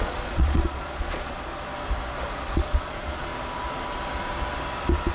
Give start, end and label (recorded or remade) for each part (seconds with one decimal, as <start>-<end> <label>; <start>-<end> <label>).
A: 0.0-1.5 remade; 1.5-2.5 recorded; 2.5-3.3 remade; 3.3-5.1 recorded